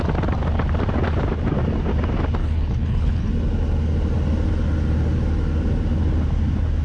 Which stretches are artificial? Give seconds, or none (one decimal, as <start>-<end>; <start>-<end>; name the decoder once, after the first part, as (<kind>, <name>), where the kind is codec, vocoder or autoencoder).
2.4-3.3 (codec, HILCodec)